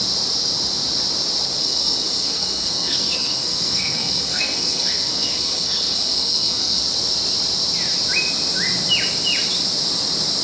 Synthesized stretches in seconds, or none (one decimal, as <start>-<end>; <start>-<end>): 1.6-6.8